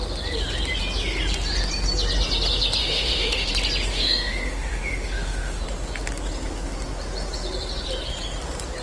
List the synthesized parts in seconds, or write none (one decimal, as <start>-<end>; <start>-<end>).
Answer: 2.8-3.5; 3.9-5.6